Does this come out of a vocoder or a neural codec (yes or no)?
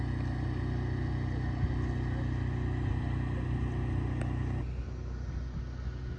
no